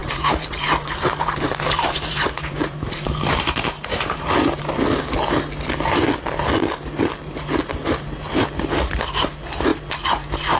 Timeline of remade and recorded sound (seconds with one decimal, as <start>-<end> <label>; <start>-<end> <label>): 0.0-4.4 remade; 4.4-10.6 recorded